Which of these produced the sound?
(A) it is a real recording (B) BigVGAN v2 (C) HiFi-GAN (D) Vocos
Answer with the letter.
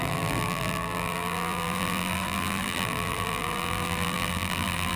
B